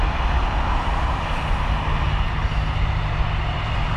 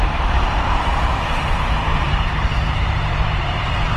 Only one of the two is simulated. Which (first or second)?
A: second